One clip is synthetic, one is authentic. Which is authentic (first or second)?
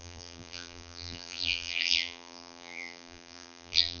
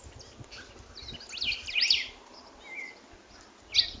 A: second